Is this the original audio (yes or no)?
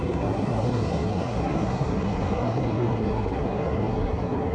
no